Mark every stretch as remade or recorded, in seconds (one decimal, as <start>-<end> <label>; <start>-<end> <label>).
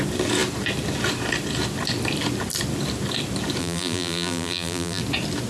0.0-3.6 recorded; 3.6-5.0 remade; 5.0-5.5 recorded